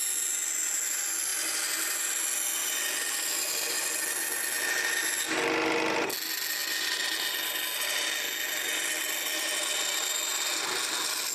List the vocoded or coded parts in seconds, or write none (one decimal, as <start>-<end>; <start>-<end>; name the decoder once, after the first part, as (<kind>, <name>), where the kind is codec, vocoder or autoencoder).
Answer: none